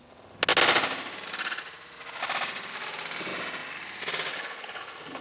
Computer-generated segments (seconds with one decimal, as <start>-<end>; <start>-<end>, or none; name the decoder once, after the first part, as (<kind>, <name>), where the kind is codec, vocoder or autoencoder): 4.3-5.2 (codec, HILCodec)

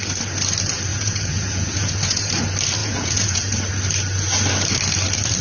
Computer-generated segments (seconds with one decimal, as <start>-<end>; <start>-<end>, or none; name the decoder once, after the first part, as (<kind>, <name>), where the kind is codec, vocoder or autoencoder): 0.9-2.3 (vocoder, Vocos); 2.8-3.6

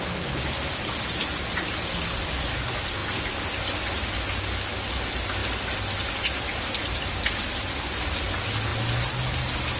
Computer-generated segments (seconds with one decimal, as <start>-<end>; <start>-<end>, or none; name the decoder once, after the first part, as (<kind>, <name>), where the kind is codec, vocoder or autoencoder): none

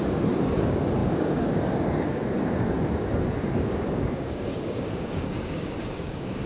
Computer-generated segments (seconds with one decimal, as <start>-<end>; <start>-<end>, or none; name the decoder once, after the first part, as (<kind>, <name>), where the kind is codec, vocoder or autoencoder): 0.0-6.5 (codec, DAC)

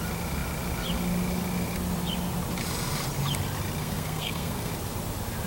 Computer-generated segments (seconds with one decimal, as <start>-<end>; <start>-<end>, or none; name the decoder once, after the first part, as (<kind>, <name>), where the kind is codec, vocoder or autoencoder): 3.8-4.7 (codec, SNAC)

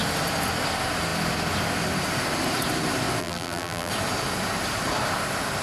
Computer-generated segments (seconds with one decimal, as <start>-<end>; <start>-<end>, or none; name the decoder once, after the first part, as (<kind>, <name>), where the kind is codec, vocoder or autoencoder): 3.2-3.9 (vocoder, BigVGAN v2)